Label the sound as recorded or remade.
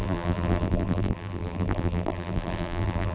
remade